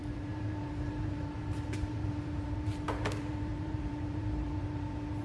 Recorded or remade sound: remade